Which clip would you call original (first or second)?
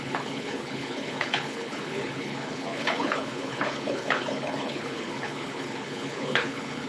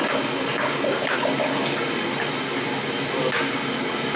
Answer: second